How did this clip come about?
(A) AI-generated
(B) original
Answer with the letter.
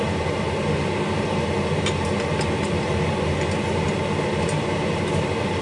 B